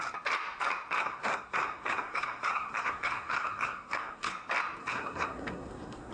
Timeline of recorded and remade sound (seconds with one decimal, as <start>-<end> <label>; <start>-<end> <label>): 0.0-1.0 recorded; 1.0-4.3 remade; 4.3-4.8 recorded; 4.8-6.1 remade